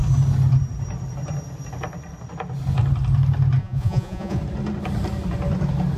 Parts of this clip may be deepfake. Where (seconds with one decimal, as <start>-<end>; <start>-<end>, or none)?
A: 3.6-4.4